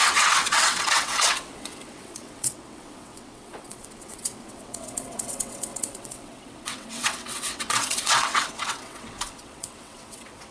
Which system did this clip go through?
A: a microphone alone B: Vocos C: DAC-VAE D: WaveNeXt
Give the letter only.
D